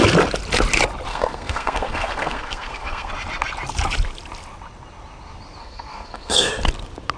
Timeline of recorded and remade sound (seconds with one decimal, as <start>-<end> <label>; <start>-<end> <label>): 0.0-1.1 recorded; 1.1-3.1 remade; 3.1-5.6 recorded; 5.6-6.5 remade; 6.5-7.2 recorded